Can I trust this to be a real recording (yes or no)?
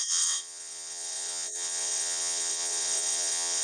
no